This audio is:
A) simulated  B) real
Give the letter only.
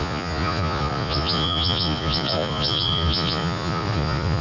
A